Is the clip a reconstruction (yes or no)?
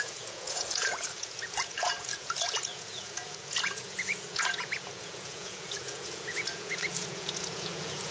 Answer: yes